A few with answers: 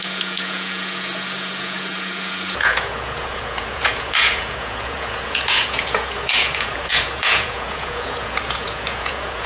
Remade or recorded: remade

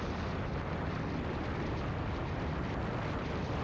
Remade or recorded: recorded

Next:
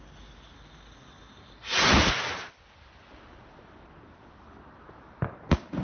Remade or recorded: recorded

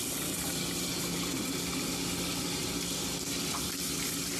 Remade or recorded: recorded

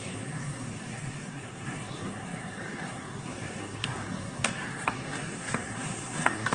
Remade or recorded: remade